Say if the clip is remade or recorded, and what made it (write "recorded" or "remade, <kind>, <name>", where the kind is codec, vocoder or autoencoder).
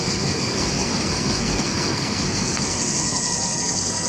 remade, codec, SNAC